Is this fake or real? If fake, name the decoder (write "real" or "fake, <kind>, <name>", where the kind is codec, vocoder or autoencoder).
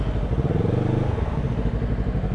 real